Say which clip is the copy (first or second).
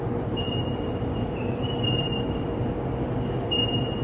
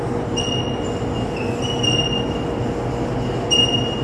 first